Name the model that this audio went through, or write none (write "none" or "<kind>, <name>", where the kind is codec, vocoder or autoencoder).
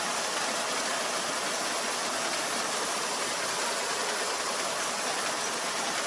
none